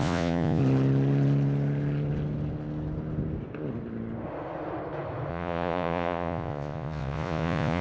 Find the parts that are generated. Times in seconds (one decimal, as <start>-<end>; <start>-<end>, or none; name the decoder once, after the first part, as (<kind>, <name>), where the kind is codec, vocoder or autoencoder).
0.0-0.6 (vocoder, Vocos); 5.3-7.8